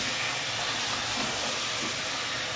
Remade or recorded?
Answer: recorded